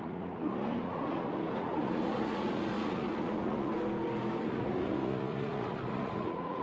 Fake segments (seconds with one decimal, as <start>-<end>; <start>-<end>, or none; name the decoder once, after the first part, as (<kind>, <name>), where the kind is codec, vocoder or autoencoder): 0.0-3.7 (vocoder, Vocos); 4.4-6.6

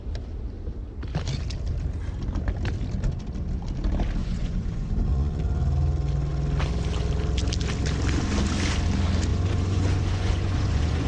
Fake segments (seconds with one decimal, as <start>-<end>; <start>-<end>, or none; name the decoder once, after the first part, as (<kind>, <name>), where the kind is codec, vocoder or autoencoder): 4.2-5.4 (vocoder, Vocos); 9.3-11.1

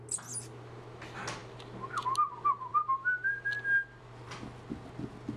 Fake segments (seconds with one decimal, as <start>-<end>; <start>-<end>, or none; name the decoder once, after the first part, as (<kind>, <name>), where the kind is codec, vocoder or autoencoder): none

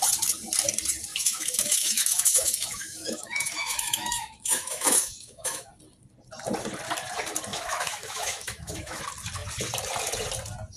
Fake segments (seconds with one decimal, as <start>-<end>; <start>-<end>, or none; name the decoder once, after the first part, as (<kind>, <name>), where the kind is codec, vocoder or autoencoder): 1.1-5.7 (autoencoder, DAC-VAE); 7.5-9.0

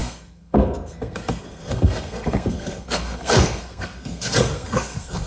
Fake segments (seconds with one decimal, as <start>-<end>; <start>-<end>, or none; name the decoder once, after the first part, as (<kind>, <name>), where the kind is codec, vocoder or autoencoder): 0.0-5.3 (codec, SNAC)

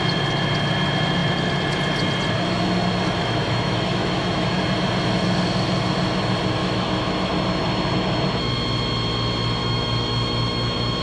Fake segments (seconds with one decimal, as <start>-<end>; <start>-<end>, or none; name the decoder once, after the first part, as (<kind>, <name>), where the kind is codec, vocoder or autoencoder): 3.2-4.6 (autoencoder, DAC-VAE); 6.6-7.3; 9.6-11.0

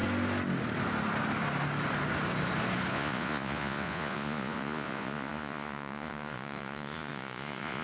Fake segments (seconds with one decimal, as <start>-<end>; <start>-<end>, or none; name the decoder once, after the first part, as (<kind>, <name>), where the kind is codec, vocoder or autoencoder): 2.9-7.8 (vocoder, Vocos)